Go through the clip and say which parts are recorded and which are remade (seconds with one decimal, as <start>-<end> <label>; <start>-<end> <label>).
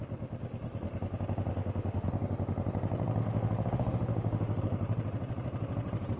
0.0-1.5 recorded; 1.5-2.1 remade; 2.1-3.2 recorded; 3.2-4.6 remade; 4.6-6.2 recorded